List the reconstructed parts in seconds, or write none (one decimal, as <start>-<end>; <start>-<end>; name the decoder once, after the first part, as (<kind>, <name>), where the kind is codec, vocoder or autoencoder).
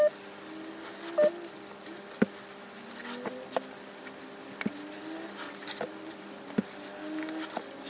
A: none